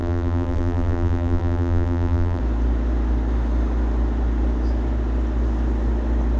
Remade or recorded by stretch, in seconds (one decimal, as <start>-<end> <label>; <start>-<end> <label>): 0.0-2.4 remade; 2.4-6.4 recorded